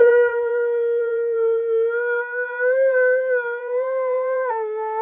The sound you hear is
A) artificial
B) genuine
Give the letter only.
A